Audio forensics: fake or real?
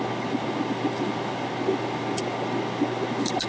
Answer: real